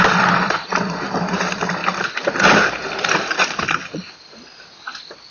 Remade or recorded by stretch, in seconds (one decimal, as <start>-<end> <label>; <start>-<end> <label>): 0.0-1.8 remade; 1.8-5.3 recorded